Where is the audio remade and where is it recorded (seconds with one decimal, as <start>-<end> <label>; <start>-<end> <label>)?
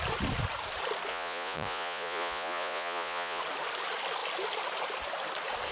0.0-1.1 recorded; 1.1-3.4 remade; 3.4-5.7 recorded